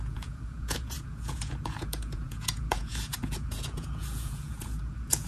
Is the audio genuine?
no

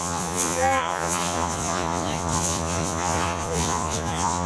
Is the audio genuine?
no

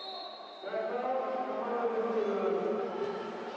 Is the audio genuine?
yes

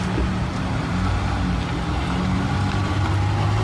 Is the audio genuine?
yes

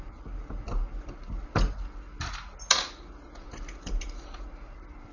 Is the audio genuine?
yes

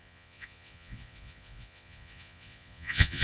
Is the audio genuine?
no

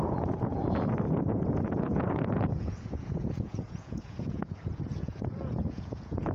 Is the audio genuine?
no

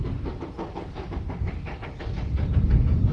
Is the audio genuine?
yes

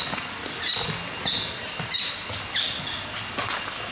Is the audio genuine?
yes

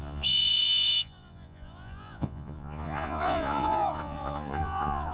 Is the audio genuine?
no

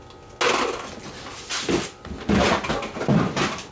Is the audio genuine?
yes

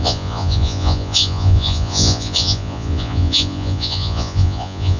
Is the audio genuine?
no